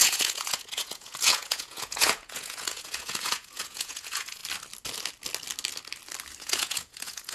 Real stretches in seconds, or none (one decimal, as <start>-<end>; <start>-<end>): 4.4-6.4